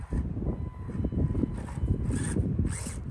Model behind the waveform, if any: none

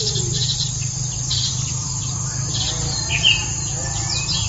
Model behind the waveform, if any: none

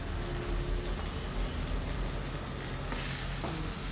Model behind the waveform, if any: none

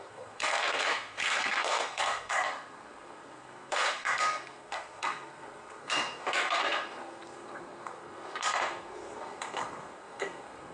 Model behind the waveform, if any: codec, SNAC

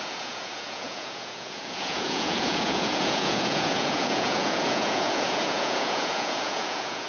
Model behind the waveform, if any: vocoder, Vocos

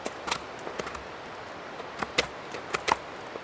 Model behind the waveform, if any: none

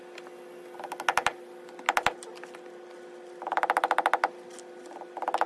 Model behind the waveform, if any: none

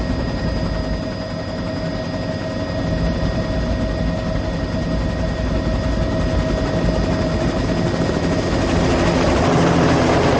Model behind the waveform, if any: none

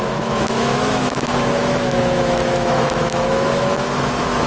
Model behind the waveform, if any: autoencoder, DAC-VAE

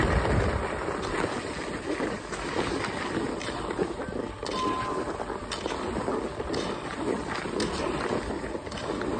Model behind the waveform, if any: none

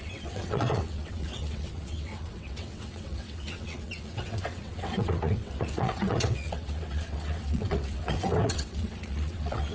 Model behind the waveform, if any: vocoder, WaveNeXt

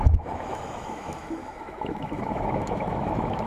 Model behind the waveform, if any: autoencoder, DAC-VAE